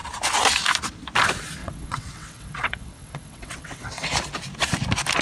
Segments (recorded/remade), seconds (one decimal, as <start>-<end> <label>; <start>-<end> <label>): 0.0-1.6 recorded; 1.6-4.1 remade; 4.1-5.2 recorded